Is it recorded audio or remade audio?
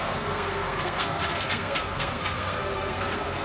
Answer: remade